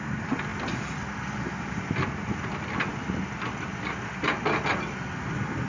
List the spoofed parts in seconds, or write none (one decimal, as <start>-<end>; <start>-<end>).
none